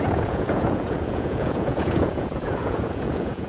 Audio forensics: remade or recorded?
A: remade